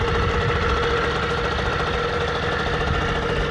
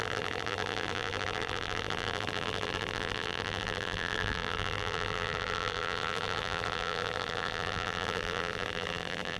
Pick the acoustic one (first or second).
first